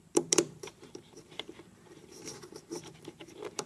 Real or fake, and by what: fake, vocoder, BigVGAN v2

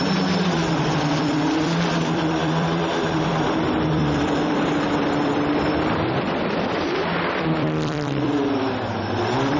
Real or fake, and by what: fake, vocoder, BigVGAN v2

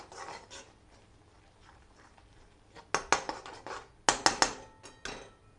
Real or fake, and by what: real